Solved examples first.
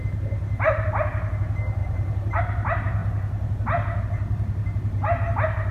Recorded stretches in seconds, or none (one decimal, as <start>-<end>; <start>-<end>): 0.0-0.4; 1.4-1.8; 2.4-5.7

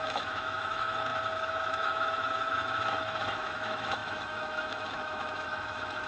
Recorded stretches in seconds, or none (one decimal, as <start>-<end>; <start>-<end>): none

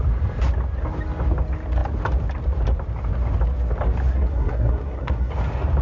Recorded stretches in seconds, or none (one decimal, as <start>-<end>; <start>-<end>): 0.0-4.1; 5.3-5.8

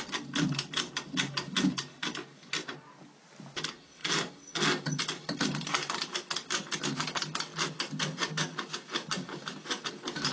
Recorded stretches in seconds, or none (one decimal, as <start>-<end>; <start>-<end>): 0.0-10.3

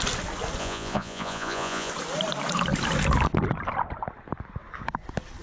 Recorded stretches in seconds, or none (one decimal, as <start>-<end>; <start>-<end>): 0.0-0.6; 1.9-5.4

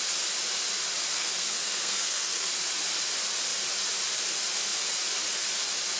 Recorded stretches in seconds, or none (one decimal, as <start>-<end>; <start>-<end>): 0.0-1.1; 2.5-6.0

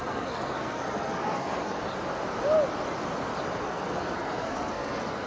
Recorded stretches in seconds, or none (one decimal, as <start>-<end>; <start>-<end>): 1.8-3.6